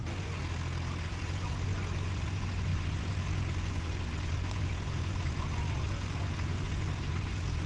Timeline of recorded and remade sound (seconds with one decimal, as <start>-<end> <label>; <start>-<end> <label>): 0.0-0.4 remade; 0.4-1.1 recorded; 1.1-7.7 remade